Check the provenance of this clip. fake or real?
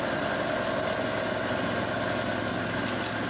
real